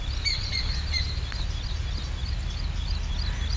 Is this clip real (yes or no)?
yes